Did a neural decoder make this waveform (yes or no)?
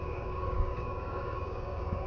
yes